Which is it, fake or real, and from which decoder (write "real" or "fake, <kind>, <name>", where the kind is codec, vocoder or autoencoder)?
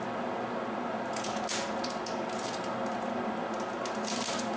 real